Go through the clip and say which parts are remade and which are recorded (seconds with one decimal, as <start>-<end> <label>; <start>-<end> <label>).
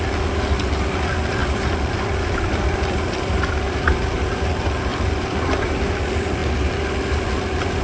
0.0-1.4 recorded; 1.4-4.4 remade; 4.4-4.9 recorded; 4.9-5.9 remade; 5.9-7.8 recorded